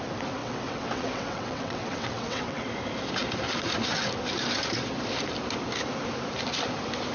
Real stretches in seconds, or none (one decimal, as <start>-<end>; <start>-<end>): 0.0-0.4; 2.7-7.1